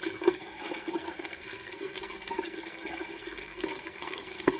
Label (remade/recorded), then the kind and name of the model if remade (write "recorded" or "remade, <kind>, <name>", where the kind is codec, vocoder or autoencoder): remade, codec, SNAC